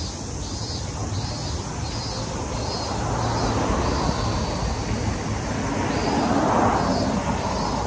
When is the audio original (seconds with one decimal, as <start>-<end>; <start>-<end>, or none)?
0.0-7.9